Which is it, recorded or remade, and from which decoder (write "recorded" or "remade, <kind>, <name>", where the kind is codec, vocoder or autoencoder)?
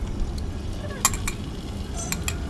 recorded